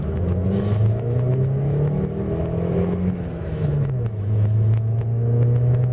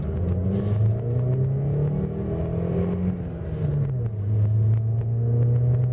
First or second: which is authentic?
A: second